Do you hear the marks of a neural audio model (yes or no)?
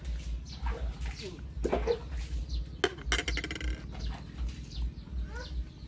no